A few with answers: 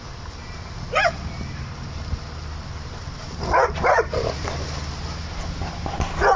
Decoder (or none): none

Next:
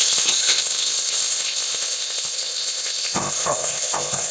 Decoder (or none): codec, ZipCodec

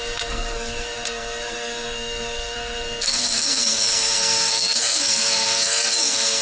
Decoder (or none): codec, SNAC